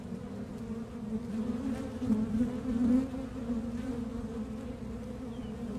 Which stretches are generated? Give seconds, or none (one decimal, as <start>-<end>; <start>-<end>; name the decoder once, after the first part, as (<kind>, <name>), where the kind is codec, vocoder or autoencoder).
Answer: none